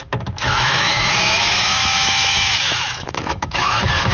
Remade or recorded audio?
remade